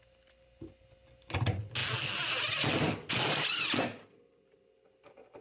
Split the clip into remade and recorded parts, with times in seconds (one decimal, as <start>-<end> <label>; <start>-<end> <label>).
0.0-5.4 recorded